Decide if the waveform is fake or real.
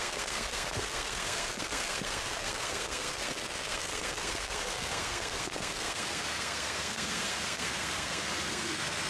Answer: fake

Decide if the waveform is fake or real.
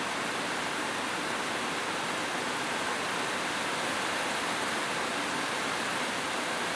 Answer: real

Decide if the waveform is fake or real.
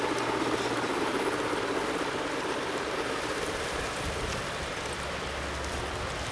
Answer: real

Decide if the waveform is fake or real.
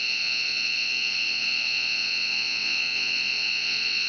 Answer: fake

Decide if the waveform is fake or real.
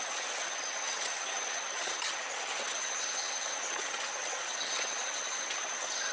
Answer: fake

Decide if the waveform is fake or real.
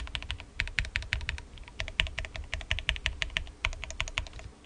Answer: real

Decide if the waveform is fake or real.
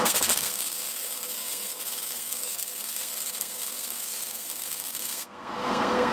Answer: fake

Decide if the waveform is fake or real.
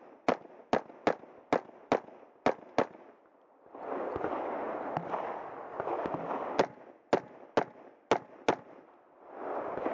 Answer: real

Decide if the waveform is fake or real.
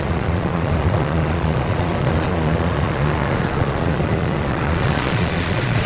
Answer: fake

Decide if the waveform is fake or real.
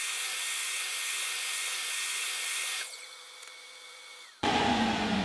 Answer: fake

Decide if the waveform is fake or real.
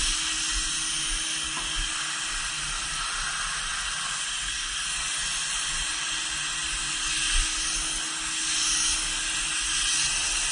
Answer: real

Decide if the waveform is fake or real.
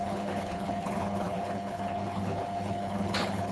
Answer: fake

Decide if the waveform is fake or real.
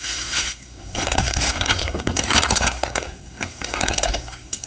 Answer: fake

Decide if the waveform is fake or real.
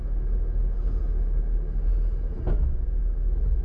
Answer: real